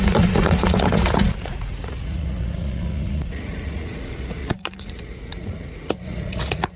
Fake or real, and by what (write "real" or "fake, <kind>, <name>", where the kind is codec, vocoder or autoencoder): fake, vocoder, Vocos